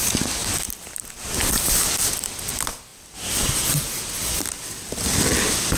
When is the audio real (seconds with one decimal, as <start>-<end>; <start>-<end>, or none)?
0.0-0.4; 1.5-2.9; 3.9-5.8